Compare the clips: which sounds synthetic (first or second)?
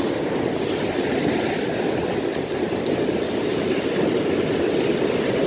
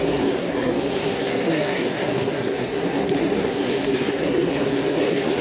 second